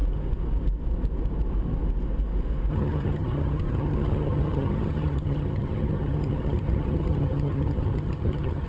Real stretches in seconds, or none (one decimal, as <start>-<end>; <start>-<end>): 0.0-2.7